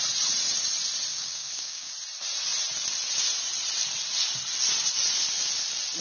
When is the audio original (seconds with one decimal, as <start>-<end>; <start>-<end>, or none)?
0.0-1.1; 1.9-6.0